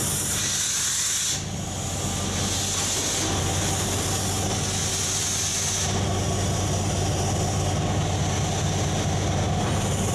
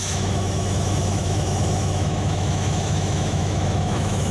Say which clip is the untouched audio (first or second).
first